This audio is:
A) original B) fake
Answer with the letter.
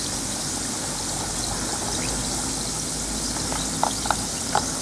A